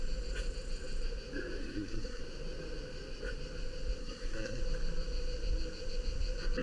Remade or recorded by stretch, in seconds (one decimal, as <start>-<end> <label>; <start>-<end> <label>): 0.0-1.6 recorded; 1.6-2.2 remade; 2.2-4.0 recorded; 4.0-4.6 remade; 4.6-6.6 recorded